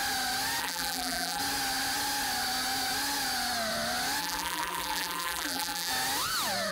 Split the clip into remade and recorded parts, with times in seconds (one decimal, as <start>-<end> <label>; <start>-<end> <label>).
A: 0.0-0.6 recorded; 0.6-1.4 remade; 1.4-4.2 recorded; 4.2-5.9 remade; 5.9-6.7 recorded